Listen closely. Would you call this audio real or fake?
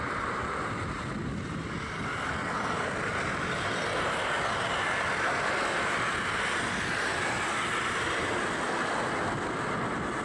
fake